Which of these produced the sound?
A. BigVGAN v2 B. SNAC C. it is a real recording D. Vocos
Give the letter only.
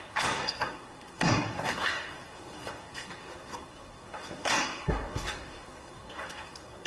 B